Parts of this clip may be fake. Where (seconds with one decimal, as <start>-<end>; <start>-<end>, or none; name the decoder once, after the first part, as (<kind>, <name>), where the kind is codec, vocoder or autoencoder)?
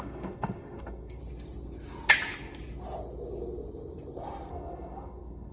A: 0.0-1.2 (codec, SNAC); 4.5-5.5